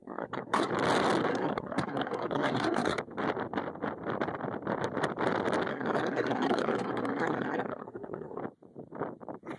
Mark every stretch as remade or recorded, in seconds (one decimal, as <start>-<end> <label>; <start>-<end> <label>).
0.0-0.7 remade; 0.7-1.3 recorded; 1.3-3.0 remade; 3.0-5.7 recorded; 5.7-8.4 remade; 8.4-9.6 recorded